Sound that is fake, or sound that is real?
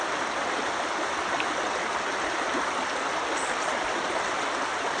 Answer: real